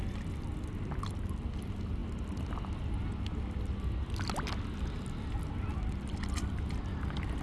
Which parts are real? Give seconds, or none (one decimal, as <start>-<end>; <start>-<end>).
0.0-7.4